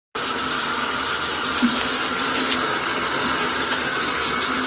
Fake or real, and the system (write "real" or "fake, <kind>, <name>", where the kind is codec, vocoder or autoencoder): real